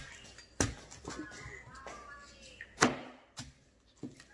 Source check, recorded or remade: recorded